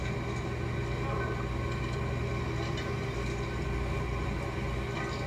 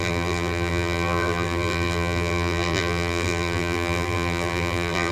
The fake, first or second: second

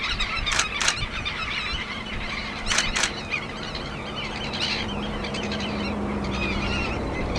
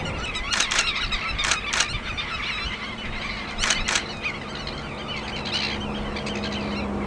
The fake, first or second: first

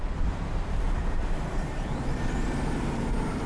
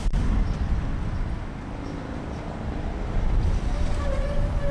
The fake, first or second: first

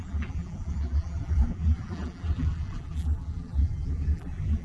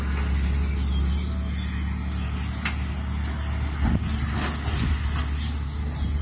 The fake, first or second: first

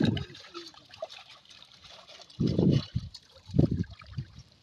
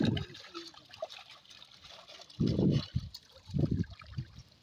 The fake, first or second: first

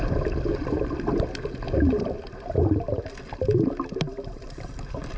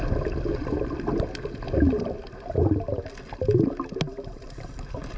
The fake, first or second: first